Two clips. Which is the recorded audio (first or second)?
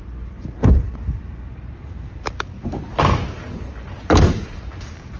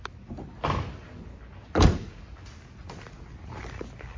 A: second